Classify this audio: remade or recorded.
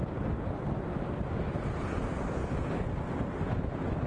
recorded